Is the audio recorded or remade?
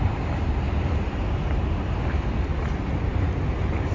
recorded